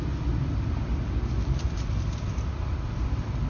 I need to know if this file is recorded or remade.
recorded